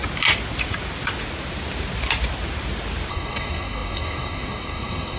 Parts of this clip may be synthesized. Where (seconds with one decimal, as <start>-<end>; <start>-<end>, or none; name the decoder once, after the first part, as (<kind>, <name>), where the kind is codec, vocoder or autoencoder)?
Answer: 3.1-5.2 (codec, SNAC)